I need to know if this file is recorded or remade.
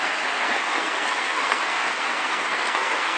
remade